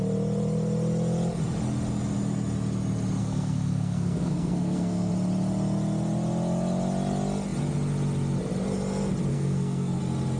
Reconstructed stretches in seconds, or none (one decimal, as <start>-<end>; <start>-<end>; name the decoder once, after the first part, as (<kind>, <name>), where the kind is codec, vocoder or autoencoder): 3.2-5.1 (codec, SNAC); 9.3-10.0